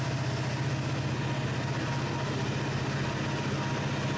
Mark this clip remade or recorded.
recorded